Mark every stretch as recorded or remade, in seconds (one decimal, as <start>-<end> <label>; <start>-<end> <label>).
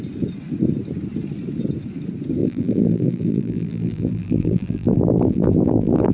0.0-2.4 recorded; 2.4-6.1 remade